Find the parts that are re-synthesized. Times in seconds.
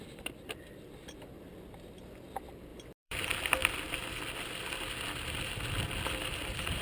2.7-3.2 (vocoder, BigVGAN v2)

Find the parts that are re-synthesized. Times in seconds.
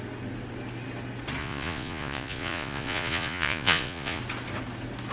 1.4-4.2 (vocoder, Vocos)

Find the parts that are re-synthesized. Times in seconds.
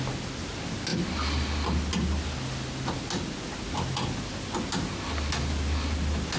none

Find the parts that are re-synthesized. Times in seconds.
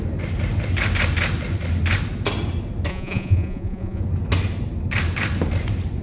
2.9-4.0 (vocoder, Vocos)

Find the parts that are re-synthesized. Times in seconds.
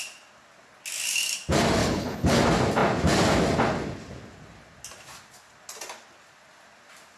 1.8-2.4 (codec, HILCodec)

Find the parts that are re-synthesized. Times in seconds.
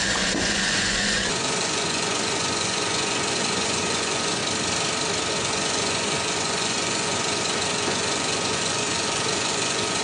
0.0-4.4 (vocoder, Vocos); 5.3-10.0